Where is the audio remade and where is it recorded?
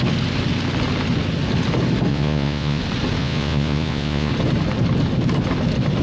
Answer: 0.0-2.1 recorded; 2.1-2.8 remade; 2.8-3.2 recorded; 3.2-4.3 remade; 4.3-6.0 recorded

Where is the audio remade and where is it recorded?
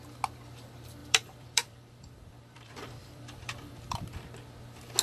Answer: 0.0-1.0 recorded; 1.0-4.0 remade; 4.0-5.0 recorded